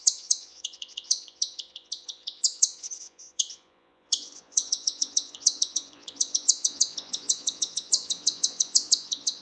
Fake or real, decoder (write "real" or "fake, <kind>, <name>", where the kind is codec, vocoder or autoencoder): fake, vocoder, Vocos